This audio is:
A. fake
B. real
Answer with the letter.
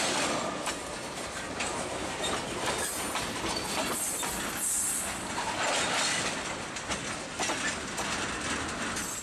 B